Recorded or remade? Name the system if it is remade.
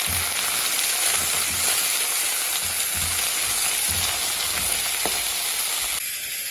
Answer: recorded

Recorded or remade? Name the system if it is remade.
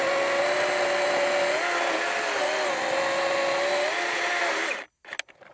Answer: recorded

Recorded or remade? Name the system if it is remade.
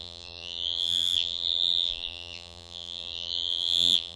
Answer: remade, vocoder, BigVGAN v2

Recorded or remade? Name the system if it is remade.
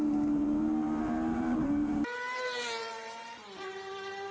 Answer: remade, vocoder, BigVGAN v2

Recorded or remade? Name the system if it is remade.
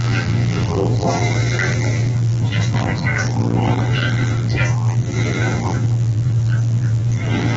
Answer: remade, vocoder, BigVGAN v2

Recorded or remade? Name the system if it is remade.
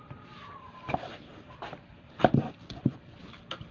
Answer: remade, vocoder, BigVGAN v2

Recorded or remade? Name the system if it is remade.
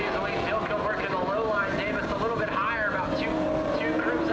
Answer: recorded